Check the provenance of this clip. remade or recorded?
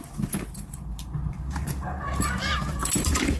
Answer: remade